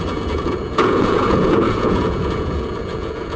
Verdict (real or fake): fake